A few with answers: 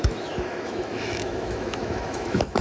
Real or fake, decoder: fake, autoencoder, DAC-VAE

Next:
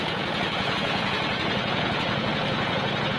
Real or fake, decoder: fake, vocoder, Vocos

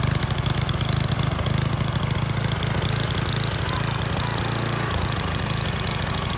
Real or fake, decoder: real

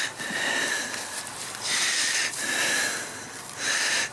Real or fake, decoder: real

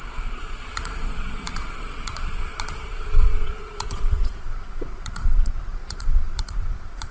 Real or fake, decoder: fake, vocoder, Vocos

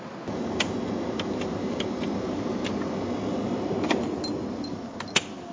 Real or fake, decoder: real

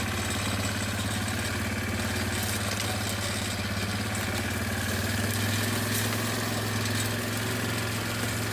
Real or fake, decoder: real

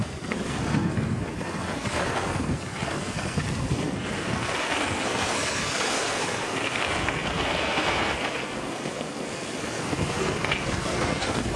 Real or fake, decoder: fake, codec, SNAC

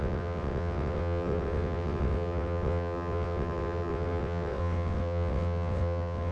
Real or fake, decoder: fake, vocoder, WaveNeXt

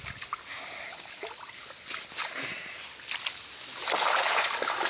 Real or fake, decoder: real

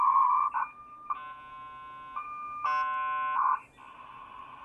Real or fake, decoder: real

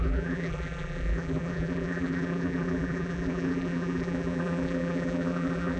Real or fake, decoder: fake, vocoder, BigVGAN v2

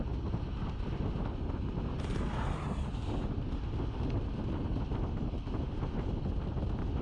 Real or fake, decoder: real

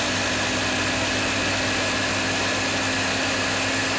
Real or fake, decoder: real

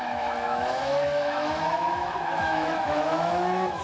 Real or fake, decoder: fake, autoencoder, DAC-VAE